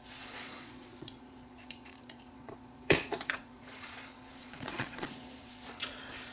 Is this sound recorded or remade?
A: remade